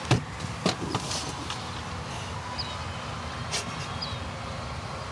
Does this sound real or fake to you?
real